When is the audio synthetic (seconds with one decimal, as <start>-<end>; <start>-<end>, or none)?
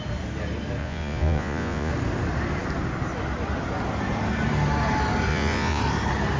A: 0.8-1.9; 5.3-5.8